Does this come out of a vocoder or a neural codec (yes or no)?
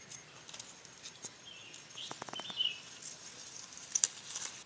no